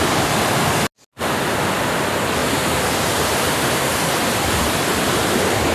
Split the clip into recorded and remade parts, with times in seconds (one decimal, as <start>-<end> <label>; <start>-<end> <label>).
0.0-2.4 recorded; 2.4-3.9 remade; 3.9-5.7 recorded